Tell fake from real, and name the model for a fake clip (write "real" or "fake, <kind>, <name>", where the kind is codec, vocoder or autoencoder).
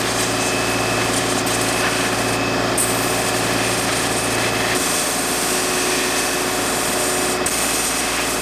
real